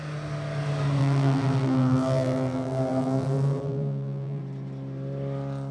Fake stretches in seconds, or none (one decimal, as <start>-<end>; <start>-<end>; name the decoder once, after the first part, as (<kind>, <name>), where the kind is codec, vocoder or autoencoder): 1.0-4.4 (vocoder, BigVGAN v2)